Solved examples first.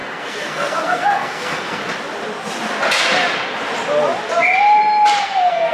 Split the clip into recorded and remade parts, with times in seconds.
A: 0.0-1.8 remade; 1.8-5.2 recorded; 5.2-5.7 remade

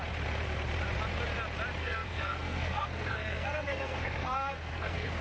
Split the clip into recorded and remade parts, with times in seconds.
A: 0.0-1.8 recorded; 1.8-5.2 remade